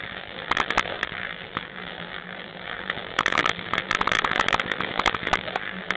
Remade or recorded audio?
remade